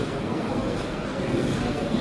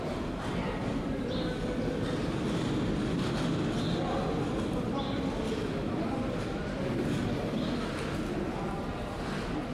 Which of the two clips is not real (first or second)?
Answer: first